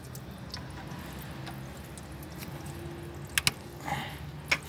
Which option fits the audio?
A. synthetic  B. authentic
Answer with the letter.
B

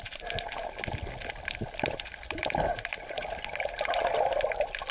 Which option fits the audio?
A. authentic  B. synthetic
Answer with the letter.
A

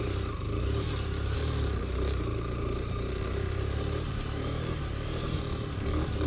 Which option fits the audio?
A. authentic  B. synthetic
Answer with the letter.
B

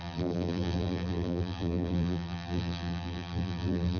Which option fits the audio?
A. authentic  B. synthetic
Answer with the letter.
B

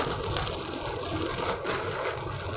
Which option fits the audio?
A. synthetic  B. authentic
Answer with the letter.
B